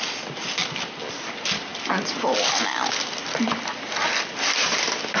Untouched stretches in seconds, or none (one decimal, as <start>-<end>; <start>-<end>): 0.0-5.2